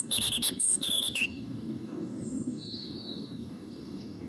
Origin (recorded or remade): remade